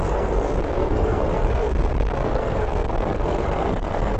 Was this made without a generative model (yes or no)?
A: no